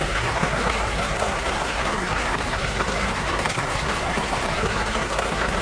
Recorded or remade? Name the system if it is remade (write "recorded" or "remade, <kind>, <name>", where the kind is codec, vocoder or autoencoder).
remade, codec, SNAC